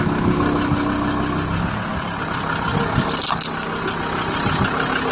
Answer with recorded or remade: recorded